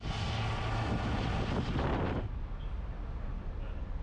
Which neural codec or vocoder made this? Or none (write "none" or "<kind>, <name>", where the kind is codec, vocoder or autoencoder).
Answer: none